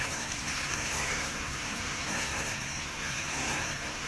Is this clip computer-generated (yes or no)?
yes